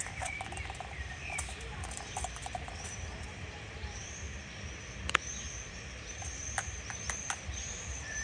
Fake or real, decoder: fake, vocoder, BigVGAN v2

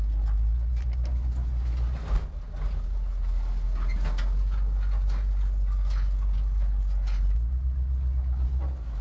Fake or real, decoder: real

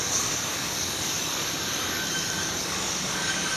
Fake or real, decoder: fake, codec, DAC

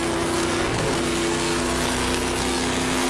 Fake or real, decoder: fake, codec, SNAC